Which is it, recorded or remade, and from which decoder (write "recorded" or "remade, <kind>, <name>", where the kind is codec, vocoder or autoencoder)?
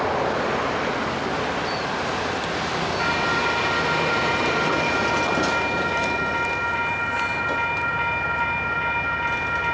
recorded